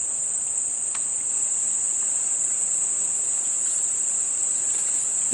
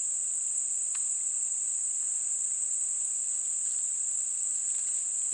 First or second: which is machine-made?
first